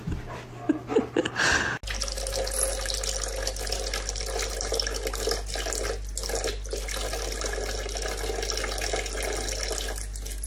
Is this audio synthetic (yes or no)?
no